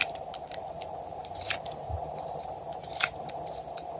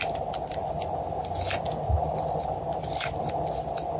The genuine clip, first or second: second